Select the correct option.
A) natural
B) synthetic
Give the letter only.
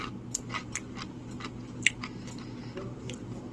A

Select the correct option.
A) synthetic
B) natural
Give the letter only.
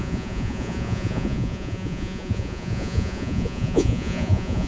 A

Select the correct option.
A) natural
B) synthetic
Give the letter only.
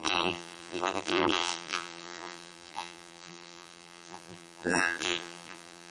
B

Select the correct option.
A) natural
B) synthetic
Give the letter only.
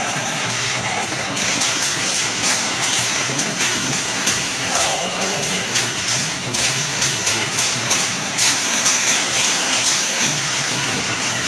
B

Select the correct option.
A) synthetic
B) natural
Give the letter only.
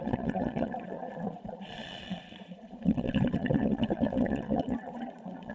A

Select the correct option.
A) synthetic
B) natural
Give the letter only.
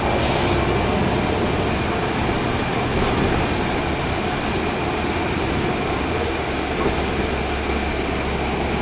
B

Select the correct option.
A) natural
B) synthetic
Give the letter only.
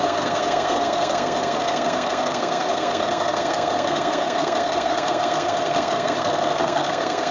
B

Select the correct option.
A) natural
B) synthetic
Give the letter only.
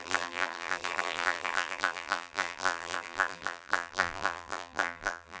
B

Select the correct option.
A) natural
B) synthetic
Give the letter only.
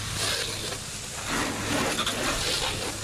A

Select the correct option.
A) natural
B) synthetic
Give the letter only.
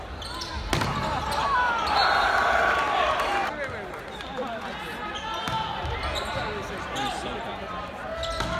A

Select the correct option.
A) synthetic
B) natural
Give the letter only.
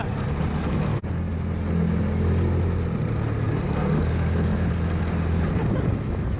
B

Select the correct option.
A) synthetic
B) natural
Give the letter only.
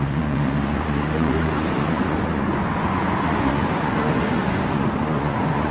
A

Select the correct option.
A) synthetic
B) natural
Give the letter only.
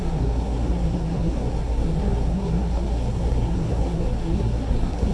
A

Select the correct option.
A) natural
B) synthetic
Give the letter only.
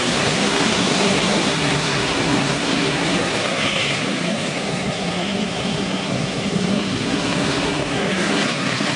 B